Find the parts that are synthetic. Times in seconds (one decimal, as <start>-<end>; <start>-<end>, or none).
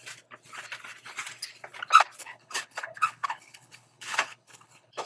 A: 2.2-5.1